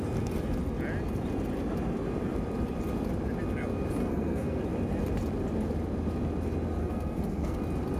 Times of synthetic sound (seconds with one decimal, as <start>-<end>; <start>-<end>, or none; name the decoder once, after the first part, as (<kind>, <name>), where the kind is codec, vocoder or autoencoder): 4.0-4.6 (codec, SNAC); 6.8-7.6